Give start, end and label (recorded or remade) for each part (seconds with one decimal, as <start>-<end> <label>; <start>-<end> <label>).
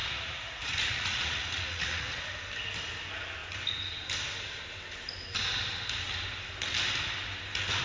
0.0-2.2 remade; 2.2-7.8 recorded